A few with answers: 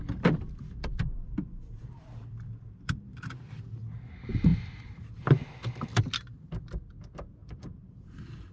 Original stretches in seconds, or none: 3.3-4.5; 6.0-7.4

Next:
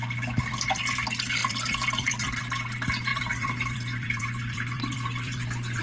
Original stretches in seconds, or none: 0.0-1.4; 2.4-3.1